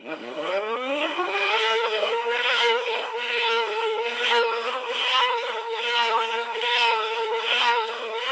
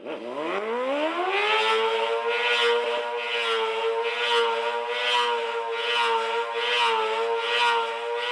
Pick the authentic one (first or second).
second